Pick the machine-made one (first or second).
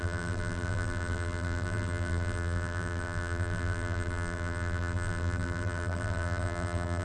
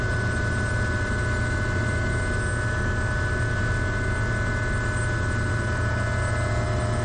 first